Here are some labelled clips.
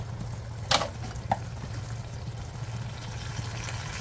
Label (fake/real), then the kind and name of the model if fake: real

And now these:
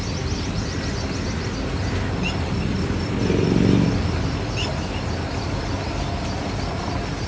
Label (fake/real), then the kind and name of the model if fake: real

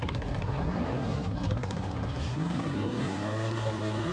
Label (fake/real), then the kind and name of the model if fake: fake, codec, SNAC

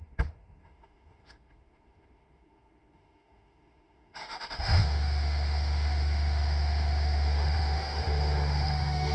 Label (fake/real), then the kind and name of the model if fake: fake, autoencoder, DAC-VAE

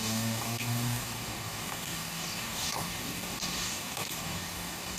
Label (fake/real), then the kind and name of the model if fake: fake, codec, DAC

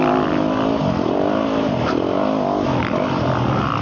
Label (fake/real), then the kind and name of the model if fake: real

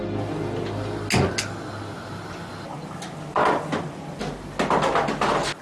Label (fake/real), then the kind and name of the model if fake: real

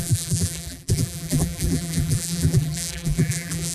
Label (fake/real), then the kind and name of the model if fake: fake, vocoder, BigVGAN v2